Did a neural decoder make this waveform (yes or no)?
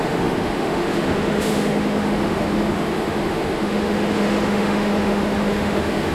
yes